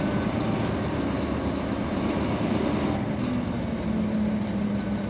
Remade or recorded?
recorded